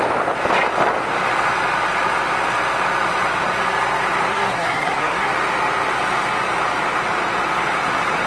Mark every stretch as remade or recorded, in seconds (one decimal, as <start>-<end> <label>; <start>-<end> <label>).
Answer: 0.0-4.3 recorded; 4.3-5.3 remade; 5.3-8.3 recorded